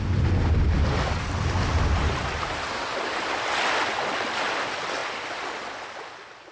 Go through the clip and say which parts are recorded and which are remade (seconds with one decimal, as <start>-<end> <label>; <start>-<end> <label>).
0.0-6.5 recorded